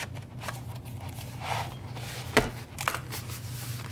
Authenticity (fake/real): real